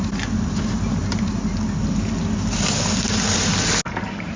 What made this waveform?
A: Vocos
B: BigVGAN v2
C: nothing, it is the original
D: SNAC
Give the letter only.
C